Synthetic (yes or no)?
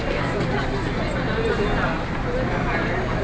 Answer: no